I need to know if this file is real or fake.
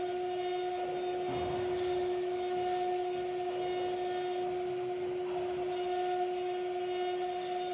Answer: real